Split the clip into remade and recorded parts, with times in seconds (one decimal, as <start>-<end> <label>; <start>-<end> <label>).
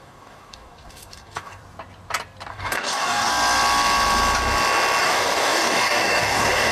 0.0-1.6 remade; 1.6-2.5 recorded; 2.5-3.3 remade; 3.3-5.0 recorded; 5.0-6.7 remade